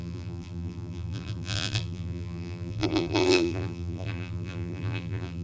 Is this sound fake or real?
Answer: fake